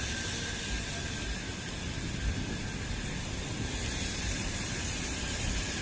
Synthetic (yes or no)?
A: no